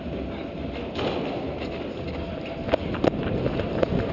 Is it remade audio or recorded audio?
recorded